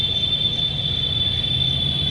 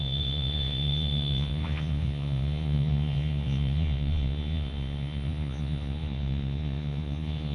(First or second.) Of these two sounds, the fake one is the second